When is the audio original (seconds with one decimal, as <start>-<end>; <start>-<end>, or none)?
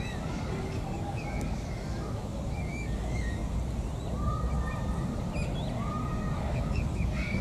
3.4-6.4